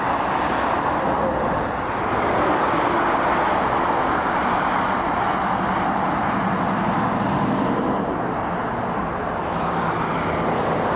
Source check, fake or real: real